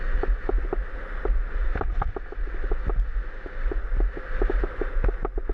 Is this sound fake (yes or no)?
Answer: no